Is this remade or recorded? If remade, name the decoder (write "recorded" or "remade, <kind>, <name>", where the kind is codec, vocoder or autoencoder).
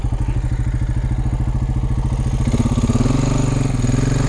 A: recorded